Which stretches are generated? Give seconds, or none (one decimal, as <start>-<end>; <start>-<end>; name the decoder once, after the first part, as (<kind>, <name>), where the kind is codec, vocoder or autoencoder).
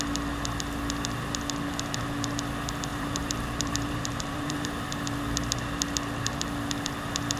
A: 2.9-4.7 (vocoder, BigVGAN v2)